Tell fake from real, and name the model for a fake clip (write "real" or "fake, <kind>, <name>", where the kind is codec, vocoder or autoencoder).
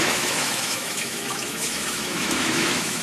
fake, autoencoder, DAC-VAE